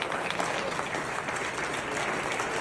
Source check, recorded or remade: recorded